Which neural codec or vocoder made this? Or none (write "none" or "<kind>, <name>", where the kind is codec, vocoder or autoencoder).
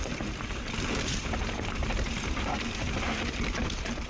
vocoder, BigVGAN v2